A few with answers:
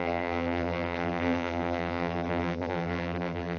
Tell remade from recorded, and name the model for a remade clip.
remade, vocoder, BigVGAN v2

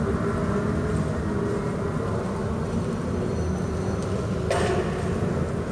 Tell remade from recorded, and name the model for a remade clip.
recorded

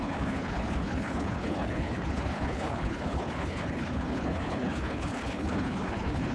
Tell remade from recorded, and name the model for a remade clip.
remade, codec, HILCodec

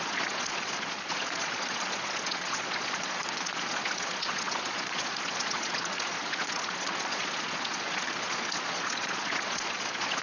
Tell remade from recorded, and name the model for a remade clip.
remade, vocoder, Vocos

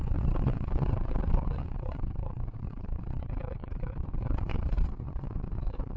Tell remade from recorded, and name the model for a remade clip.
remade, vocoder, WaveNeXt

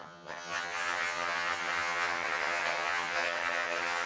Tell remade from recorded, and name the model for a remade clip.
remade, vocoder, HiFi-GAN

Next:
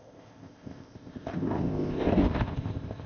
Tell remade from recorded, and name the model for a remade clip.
remade, codec, ZipCodec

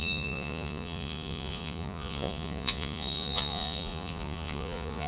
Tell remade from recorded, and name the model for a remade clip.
remade, vocoder, Vocos